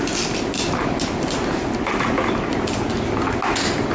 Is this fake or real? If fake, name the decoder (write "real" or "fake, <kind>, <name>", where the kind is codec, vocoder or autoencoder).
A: real